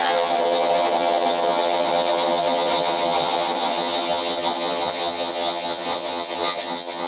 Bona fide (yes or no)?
no